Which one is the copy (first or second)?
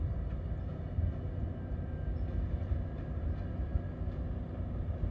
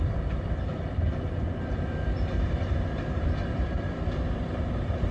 second